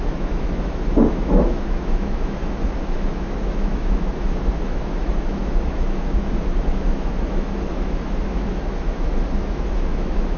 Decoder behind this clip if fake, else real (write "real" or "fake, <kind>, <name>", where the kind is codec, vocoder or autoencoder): fake, autoencoder, DAC-VAE